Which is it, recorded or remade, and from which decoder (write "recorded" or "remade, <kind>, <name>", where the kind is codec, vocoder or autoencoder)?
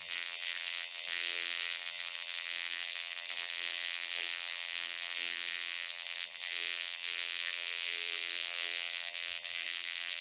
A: remade, vocoder, BigVGAN v2